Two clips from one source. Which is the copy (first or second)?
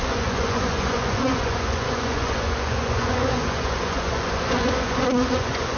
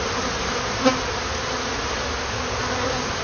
first